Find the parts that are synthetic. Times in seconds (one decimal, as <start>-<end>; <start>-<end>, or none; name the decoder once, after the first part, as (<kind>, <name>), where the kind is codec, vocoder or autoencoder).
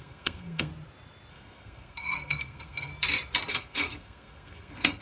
0.0-0.7 (codec, SNAC); 1.3-2.9; 3.5-5.0